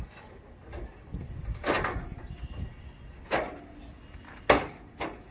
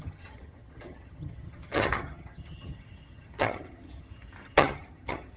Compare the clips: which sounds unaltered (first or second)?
first